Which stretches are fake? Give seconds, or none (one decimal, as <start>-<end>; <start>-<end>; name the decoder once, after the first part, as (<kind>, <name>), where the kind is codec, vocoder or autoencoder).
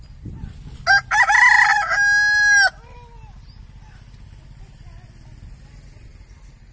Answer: none